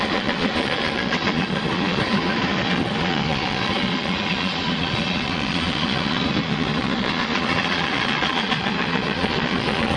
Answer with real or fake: fake